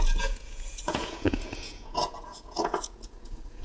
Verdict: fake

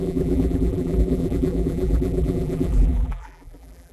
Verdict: fake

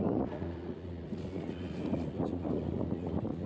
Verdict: fake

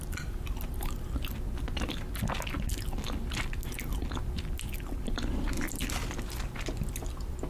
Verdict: real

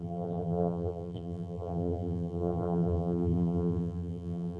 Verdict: fake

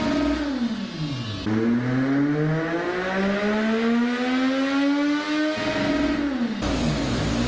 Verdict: real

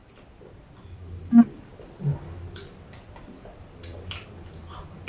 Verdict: real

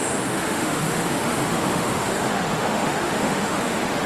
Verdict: fake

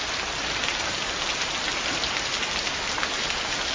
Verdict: real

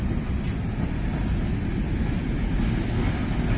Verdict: real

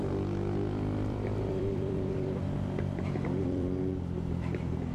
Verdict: fake